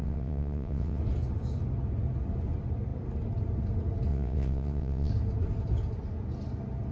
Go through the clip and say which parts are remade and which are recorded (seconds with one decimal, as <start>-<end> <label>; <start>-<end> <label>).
0.0-1.0 remade; 1.0-4.1 recorded; 4.1-5.1 remade; 5.1-6.9 recorded